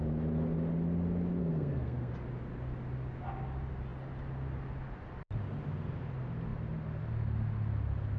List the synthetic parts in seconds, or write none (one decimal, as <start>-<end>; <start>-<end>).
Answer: 1.4-2.1